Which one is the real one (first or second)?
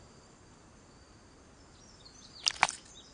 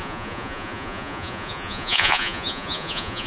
first